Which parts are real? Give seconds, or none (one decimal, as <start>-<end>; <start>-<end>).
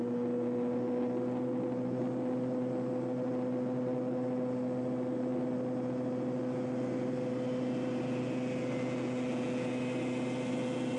0.0-11.0